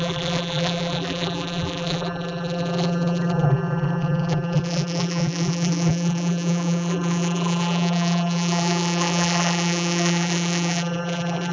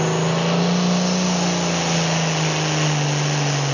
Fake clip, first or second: first